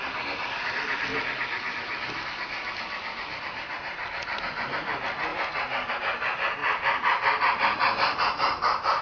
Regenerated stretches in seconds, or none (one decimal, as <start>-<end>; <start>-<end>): none